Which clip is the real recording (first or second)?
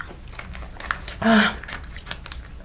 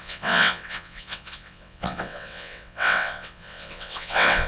first